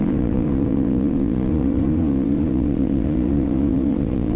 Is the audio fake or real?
fake